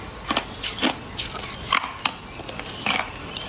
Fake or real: real